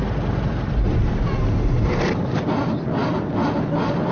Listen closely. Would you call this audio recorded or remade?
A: recorded